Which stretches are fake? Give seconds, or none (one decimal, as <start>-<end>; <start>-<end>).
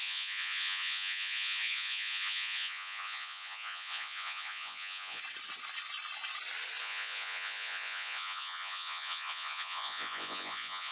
0.0-5.2; 6.8-10.9